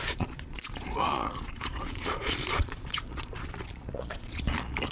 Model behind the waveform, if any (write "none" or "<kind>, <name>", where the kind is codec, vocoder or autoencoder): vocoder, Vocos